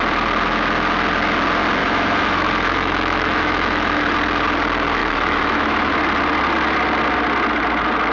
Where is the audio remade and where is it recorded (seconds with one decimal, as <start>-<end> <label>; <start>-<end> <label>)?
0.0-1.8 recorded; 1.8-4.1 remade; 4.1-5.0 recorded; 5.0-5.9 remade; 5.9-8.1 recorded